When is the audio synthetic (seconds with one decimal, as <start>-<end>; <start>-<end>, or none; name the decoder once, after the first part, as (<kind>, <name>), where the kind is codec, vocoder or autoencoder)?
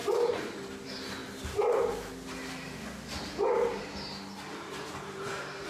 1.2-2.1 (vocoder, BigVGAN v2); 4.5-5.7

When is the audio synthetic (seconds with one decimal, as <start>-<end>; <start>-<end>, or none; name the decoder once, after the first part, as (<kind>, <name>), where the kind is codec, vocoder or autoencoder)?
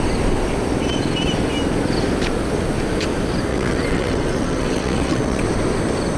3.5-5.4 (vocoder, WaveNeXt)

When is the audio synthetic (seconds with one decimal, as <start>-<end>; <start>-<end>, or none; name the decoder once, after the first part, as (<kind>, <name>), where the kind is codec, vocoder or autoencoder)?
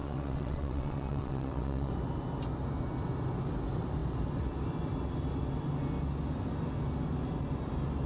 0.0-1.9 (vocoder, WaveNeXt)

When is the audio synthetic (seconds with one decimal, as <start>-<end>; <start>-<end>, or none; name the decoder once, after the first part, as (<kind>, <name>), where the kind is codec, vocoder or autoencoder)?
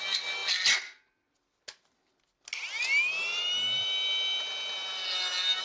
none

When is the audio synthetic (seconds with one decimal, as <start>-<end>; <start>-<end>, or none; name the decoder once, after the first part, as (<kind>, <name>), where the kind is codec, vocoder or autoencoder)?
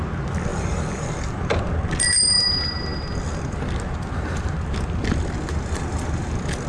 0.5-1.7 (vocoder, BigVGAN v2)